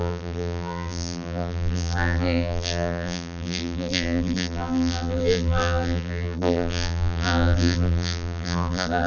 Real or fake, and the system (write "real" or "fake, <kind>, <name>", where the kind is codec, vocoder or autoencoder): fake, vocoder, BigVGAN v2